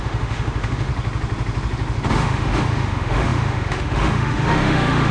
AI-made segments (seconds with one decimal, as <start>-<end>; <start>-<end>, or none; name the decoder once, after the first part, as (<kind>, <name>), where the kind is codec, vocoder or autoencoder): 0.0-0.9 (autoencoder, DAC-VAE); 2.1-5.1